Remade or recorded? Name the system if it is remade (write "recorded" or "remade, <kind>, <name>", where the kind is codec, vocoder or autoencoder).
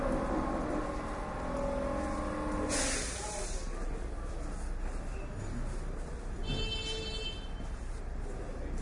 recorded